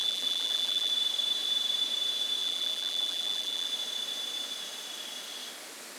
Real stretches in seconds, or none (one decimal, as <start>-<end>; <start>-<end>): 0.9-2.4; 3.7-6.0